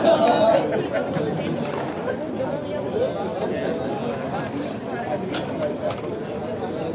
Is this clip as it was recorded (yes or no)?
yes